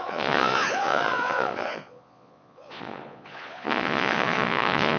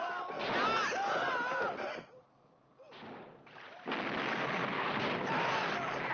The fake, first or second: first